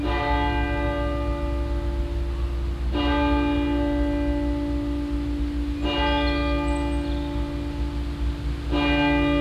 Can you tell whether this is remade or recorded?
recorded